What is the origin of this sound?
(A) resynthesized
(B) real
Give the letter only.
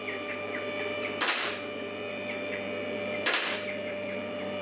A